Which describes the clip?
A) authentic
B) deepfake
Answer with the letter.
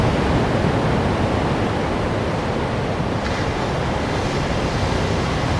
A